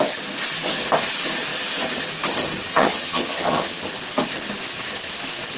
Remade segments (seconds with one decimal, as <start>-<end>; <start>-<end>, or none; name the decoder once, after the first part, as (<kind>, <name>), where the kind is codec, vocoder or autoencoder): 2.7-3.8 (vocoder, HiFi-GAN)